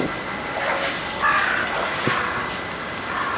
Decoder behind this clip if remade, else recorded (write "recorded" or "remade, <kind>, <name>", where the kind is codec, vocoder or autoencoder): recorded